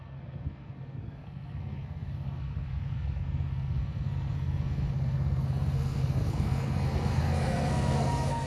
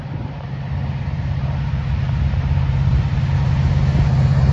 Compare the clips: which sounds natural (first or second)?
second